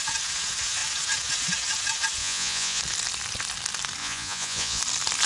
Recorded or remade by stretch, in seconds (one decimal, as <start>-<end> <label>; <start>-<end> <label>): 0.0-2.2 recorded; 2.2-2.8 remade; 2.8-4.0 recorded; 4.0-4.8 remade; 4.8-5.3 recorded